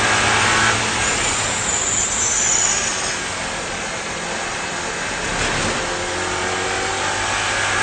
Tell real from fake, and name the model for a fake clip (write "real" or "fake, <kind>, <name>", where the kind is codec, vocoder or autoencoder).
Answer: real